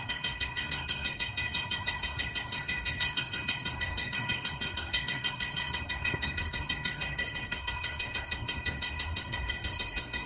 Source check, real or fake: fake